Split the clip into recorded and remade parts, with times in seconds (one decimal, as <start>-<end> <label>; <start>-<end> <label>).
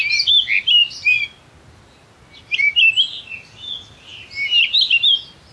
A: 0.0-5.5 recorded